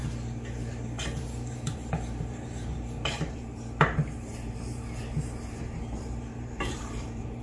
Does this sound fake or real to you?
fake